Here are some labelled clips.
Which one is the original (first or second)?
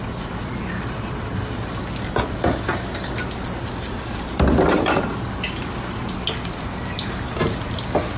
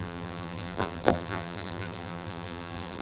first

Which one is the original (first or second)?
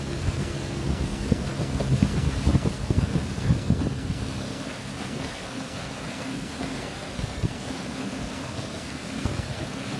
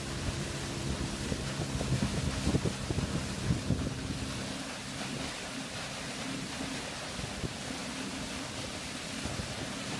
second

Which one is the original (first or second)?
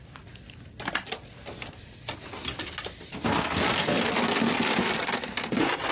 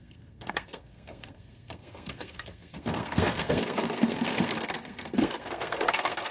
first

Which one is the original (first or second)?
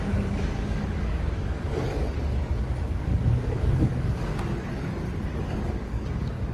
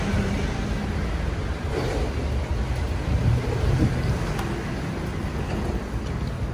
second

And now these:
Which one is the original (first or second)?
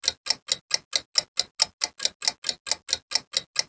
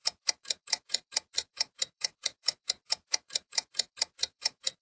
first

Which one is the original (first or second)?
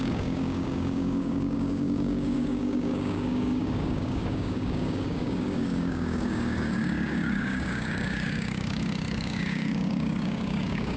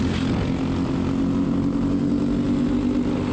second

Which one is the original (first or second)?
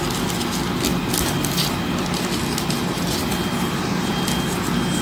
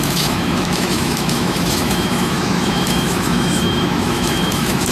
first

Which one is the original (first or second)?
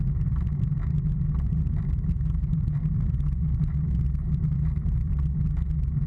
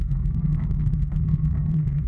first